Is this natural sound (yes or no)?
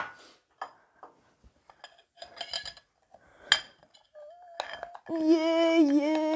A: yes